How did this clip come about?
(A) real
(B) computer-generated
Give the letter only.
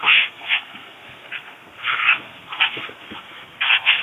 B